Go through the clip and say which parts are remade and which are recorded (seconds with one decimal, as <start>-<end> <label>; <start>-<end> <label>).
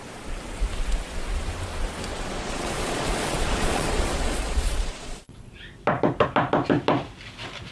0.0-2.1 recorded; 2.1-5.5 remade; 5.5-7.7 recorded